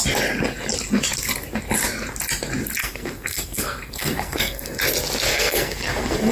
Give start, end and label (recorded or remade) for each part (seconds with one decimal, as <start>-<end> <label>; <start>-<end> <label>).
0.0-2.8 recorded; 2.8-4.8 remade; 4.8-5.3 recorded; 5.3-6.3 remade